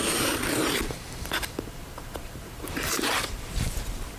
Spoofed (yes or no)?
yes